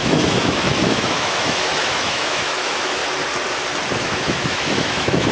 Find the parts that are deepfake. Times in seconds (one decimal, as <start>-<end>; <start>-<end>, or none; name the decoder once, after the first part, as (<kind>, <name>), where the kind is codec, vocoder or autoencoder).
0.0-3.0 (autoencoder, DAC-VAE); 4.0-5.3